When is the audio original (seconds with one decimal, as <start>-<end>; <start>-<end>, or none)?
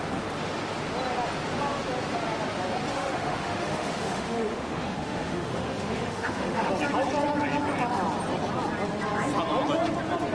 0.0-2.9; 6.7-10.3